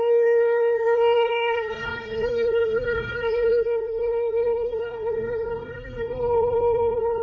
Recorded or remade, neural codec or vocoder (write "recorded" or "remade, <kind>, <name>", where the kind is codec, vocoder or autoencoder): remade, codec, SNAC